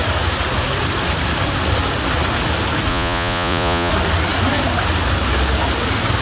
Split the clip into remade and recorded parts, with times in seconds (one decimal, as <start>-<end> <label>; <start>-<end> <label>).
0.0-2.9 recorded; 2.9-3.9 remade; 3.9-6.2 recorded